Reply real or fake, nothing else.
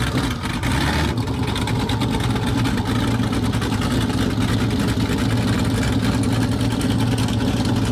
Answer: real